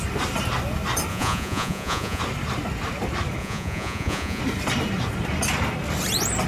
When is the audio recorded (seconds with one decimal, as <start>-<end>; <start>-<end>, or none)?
0.0-1.1; 2.2-3.4; 4.4-6.5